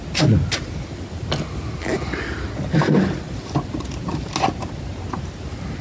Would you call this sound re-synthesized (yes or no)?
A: no